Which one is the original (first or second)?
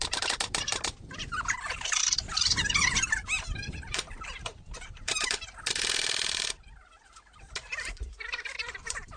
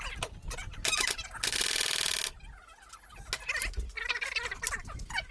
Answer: second